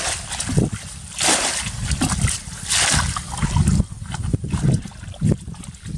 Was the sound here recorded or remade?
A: recorded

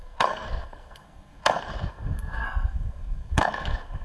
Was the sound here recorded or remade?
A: remade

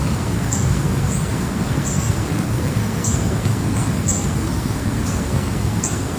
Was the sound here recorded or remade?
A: remade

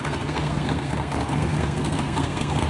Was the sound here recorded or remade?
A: remade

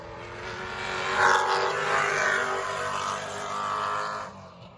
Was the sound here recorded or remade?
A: recorded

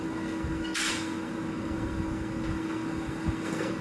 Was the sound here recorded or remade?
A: remade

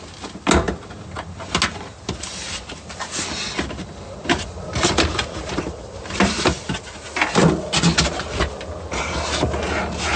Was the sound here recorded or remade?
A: recorded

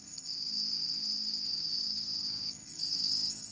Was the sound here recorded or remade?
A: remade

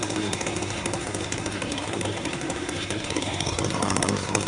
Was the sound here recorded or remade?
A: remade